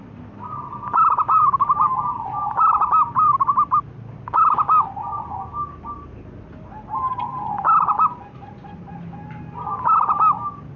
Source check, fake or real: real